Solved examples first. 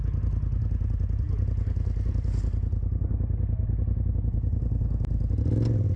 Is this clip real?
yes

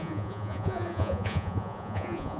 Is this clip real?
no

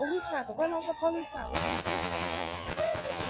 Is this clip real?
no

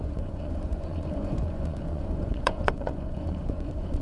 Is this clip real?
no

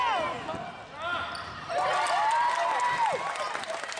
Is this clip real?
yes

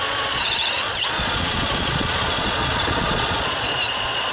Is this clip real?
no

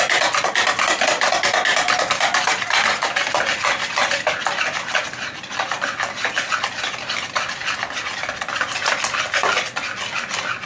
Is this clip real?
yes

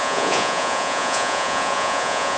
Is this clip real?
no